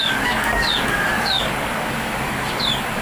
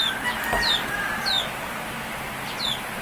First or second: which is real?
second